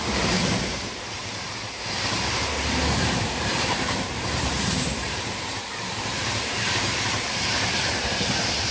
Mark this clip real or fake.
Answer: fake